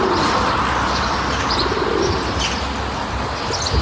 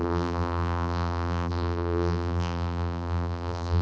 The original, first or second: first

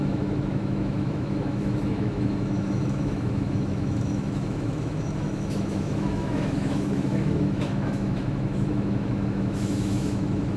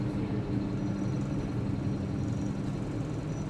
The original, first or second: second